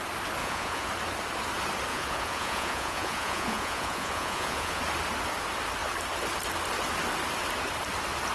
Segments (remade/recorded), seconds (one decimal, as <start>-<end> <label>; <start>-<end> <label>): 0.0-0.4 recorded; 0.4-0.9 remade; 0.9-1.9 recorded; 1.9-4.8 remade; 4.8-8.3 recorded